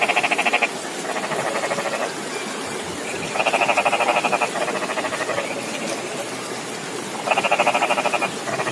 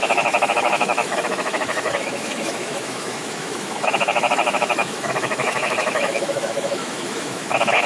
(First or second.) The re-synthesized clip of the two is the second